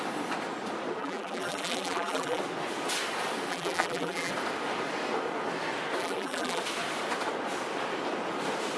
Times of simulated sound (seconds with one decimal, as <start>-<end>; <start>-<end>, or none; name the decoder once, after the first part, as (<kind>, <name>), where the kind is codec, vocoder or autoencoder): 1.0-2.4 (vocoder, BigVGAN v2); 3.5-4.3; 6.0-6.6